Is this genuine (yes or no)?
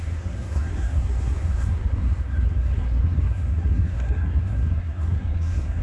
no